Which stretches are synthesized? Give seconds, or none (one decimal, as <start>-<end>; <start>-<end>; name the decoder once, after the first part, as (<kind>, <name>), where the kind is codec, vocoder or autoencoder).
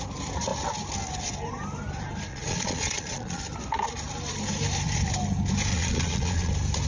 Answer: 2.3-3.4 (vocoder, Vocos); 5.7-6.5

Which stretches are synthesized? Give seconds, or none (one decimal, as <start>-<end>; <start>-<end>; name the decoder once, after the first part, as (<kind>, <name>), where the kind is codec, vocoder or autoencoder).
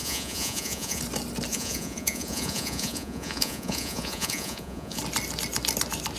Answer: 0.0-1.0 (vocoder, Vocos); 1.5-5.0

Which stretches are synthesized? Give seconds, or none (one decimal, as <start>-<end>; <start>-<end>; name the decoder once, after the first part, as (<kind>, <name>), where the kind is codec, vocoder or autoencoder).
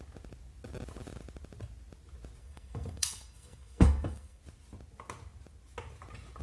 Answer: 2.4-4.4 (codec, SNAC)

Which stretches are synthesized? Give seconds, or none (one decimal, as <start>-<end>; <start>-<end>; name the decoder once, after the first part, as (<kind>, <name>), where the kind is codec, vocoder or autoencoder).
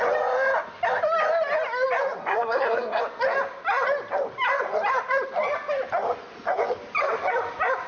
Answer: 2.2-3.0 (codec, SNAC)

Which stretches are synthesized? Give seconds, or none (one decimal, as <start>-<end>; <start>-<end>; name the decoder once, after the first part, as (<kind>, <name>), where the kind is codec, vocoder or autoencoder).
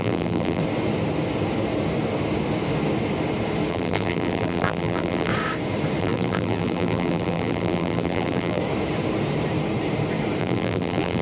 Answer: 0.0-0.6 (vocoder, BigVGAN v2); 3.7-5.3; 6.0-8.6; 10.4-11.2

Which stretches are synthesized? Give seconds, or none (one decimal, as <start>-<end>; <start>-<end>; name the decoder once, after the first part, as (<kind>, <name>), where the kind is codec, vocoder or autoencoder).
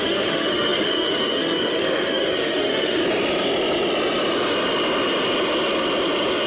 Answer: 0.0-3.0 (autoencoder, DAC-VAE)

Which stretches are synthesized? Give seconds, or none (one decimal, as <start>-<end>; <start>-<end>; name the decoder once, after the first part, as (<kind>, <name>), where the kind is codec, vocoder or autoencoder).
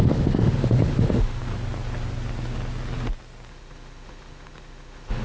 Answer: 0.0-1.4 (autoencoder, DAC-VAE); 3.5-5.2